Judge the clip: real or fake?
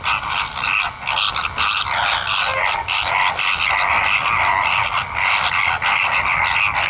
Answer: real